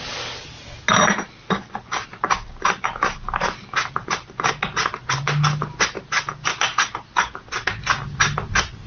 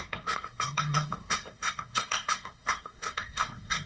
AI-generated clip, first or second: second